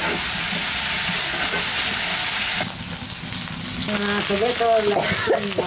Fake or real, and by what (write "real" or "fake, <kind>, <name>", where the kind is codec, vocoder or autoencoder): real